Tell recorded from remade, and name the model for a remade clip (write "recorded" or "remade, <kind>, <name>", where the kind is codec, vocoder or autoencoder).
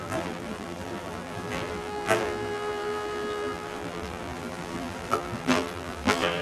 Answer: remade, vocoder, BigVGAN v2